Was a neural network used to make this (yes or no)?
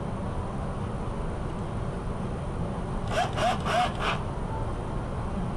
no